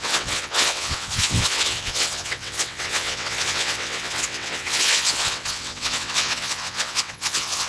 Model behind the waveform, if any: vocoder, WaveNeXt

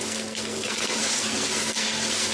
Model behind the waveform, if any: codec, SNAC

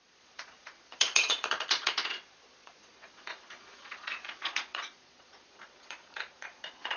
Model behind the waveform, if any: vocoder, Vocos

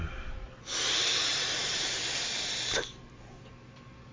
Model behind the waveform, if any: none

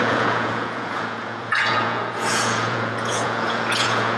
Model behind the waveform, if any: vocoder, Vocos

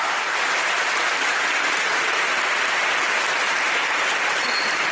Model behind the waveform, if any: none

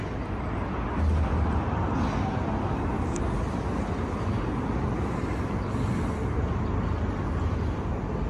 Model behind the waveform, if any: none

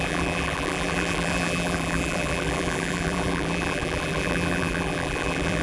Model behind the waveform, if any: vocoder, BigVGAN v2